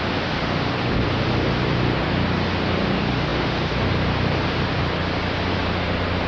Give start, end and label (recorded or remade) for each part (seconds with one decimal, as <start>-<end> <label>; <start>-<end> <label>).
0.0-6.3 recorded